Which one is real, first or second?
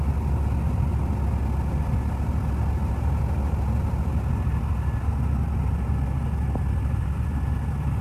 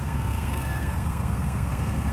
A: first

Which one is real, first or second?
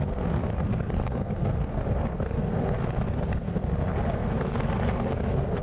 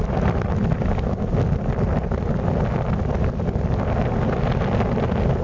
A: second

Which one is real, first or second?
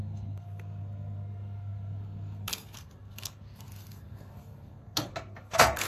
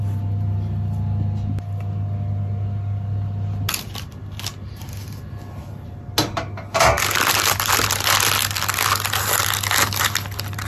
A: second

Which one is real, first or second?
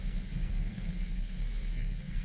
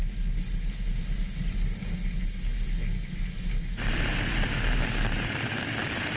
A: second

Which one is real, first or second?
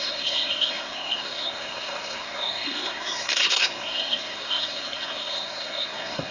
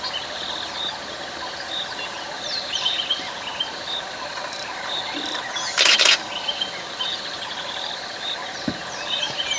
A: second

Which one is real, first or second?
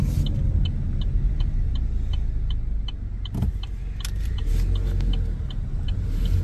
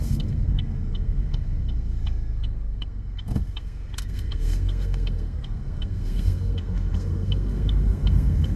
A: first